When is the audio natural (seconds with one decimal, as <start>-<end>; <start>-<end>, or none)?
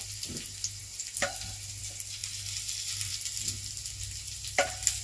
0.0-5.0